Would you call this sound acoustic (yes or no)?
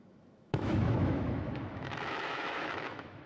no